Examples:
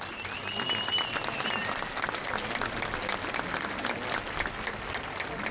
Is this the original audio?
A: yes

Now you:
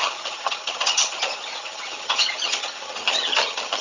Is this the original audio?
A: no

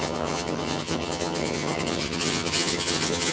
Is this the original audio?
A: no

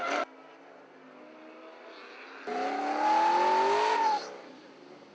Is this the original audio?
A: yes